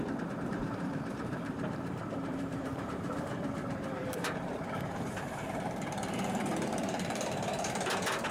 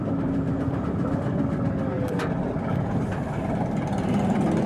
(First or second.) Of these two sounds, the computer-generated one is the first